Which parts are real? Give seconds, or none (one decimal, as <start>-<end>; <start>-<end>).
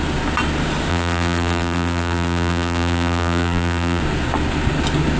0.0-0.9; 4.0-5.2